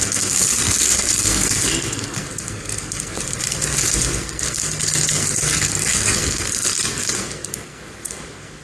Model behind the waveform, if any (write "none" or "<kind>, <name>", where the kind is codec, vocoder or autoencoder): codec, SNAC